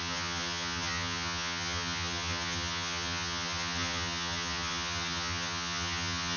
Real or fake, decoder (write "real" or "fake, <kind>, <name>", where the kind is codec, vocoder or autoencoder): fake, vocoder, HiFi-GAN